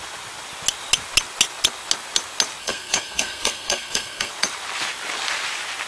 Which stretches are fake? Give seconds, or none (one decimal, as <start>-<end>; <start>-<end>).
2.6-4.3